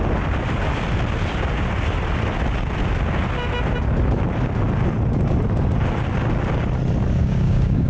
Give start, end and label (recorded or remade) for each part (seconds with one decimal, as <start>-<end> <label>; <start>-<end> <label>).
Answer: 0.0-7.2 recorded; 7.2-7.9 remade